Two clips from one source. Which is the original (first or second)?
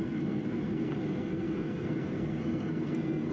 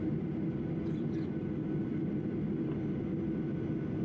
second